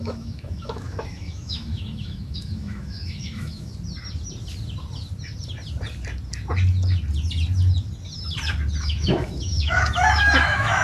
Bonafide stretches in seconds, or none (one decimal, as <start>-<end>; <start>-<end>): 3.7-8.8